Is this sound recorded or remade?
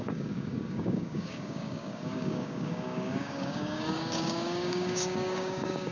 remade